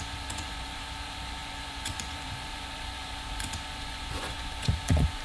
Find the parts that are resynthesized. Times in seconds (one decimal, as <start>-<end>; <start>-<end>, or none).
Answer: 0.0-5.2

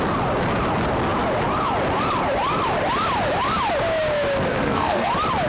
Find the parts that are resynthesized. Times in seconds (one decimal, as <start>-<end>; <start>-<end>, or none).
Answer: 4.5-5.1

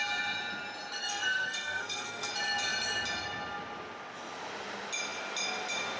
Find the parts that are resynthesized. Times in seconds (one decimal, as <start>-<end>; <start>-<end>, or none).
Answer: 1.0-2.3

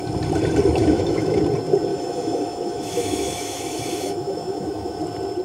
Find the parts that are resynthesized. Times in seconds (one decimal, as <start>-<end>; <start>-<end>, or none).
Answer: 0.8-1.4; 1.9-5.0

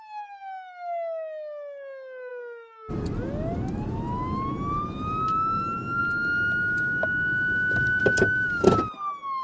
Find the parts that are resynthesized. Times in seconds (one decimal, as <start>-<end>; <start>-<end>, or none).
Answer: none

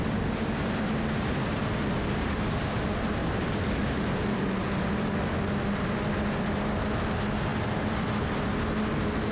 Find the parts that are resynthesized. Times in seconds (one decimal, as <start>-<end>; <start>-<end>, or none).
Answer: 3.2-6.5